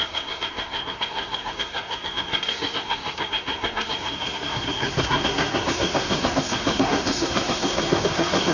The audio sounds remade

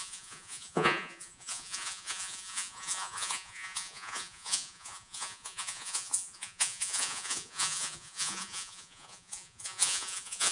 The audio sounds remade